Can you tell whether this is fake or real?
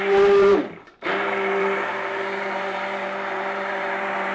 fake